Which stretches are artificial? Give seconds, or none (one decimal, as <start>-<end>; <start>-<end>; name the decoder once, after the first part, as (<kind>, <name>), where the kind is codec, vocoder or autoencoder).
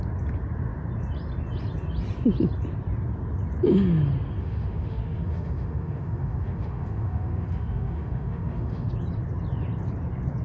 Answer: 4.4-8.9 (autoencoder, DAC-VAE)